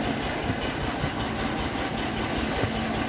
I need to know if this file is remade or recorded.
recorded